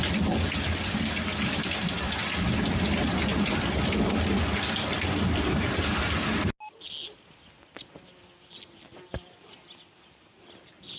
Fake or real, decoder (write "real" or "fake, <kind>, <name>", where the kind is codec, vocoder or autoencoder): real